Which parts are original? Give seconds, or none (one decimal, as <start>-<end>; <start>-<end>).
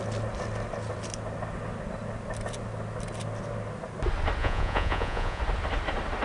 0.0-4.4; 5.4-6.2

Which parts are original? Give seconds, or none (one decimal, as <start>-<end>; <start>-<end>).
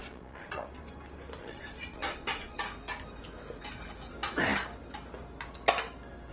0.7-1.4; 2.6-6.3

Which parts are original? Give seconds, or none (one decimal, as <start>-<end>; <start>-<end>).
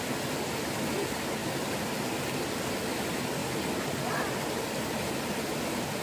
0.0-6.0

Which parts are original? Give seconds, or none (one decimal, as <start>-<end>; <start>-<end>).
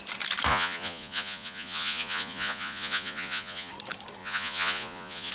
0.0-0.5; 3.7-4.2